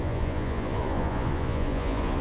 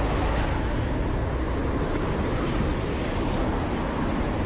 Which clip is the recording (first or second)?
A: second